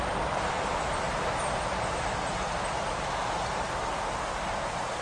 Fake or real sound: real